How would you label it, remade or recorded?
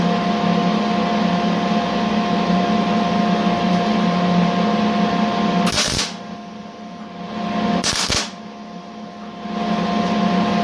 recorded